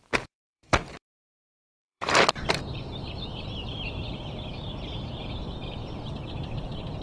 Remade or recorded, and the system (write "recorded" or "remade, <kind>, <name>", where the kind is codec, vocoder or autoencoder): remade, vocoder, BigVGAN v2